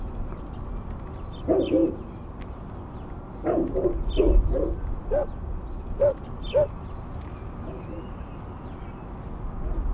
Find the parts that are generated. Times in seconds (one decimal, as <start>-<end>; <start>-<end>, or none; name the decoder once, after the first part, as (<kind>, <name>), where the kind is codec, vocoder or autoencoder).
none